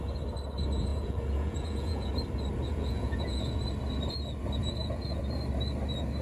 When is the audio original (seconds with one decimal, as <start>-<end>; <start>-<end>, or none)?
0.0-0.9; 2.1-2.7; 3.6-4.6; 5.2-6.2